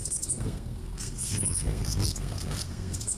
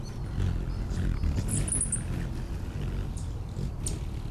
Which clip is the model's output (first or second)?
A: first